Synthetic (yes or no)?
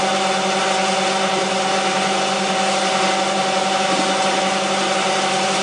no